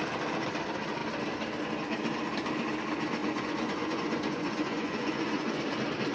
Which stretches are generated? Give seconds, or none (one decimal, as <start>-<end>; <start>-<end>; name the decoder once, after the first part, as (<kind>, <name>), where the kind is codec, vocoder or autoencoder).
3.2-5.6 (vocoder, Vocos)